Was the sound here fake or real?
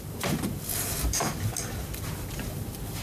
fake